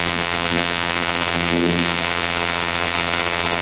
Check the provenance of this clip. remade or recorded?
remade